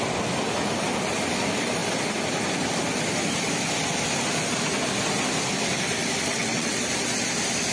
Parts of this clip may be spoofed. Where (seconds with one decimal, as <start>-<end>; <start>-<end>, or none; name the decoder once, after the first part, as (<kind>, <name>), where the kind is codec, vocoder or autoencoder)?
6.3-6.8 (vocoder, WaveNeXt)